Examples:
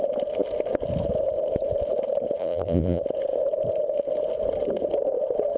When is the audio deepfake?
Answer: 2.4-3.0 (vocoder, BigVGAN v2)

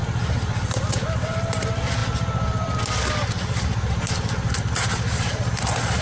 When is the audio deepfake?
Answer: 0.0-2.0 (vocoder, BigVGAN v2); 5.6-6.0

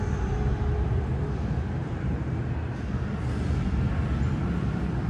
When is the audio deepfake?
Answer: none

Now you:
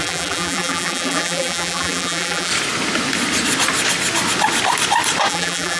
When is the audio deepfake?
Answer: 0.0-2.5 (vocoder, BigVGAN v2); 5.3-5.8

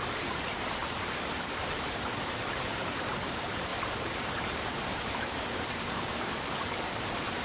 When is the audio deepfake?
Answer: 0.0-3.7 (vocoder, BigVGAN v2); 4.4-7.4